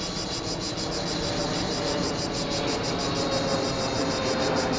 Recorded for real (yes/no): yes